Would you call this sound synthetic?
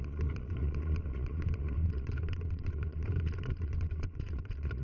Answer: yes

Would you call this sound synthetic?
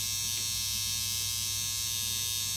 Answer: no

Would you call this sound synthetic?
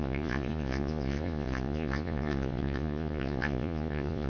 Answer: yes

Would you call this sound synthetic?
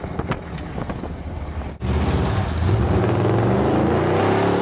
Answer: no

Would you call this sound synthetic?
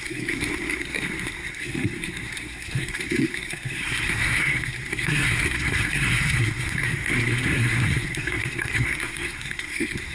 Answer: yes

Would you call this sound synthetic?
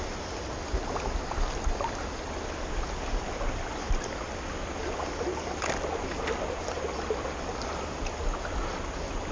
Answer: no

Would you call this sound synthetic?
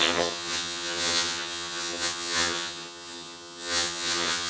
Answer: yes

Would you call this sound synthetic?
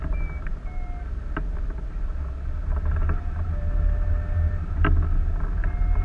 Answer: no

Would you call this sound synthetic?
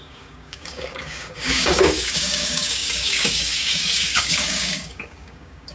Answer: yes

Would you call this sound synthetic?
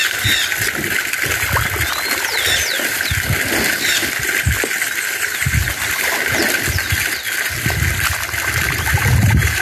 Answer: no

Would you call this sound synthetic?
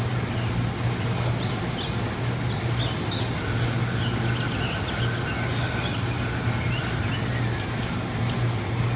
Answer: no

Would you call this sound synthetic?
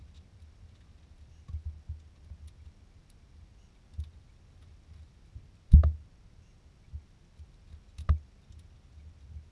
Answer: no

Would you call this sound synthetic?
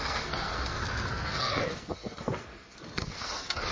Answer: yes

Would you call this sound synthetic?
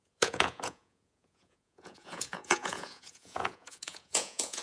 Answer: yes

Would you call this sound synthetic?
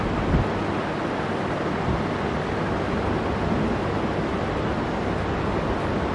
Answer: no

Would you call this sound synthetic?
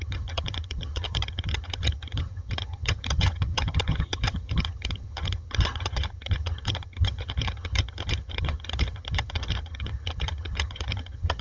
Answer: yes